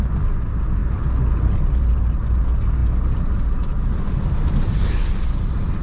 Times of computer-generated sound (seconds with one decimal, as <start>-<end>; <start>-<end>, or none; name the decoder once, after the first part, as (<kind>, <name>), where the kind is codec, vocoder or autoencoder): none